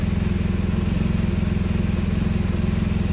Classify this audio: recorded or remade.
recorded